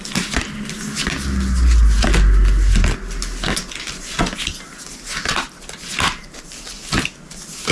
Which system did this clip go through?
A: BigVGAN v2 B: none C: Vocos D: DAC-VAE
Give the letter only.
B